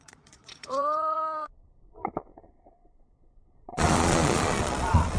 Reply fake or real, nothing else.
fake